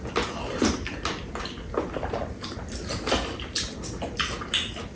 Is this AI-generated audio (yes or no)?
no